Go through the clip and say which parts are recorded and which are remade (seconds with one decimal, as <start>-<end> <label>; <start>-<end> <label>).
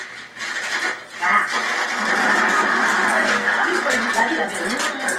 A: 0.0-3.1 recorded; 3.1-4.1 remade; 4.1-5.2 recorded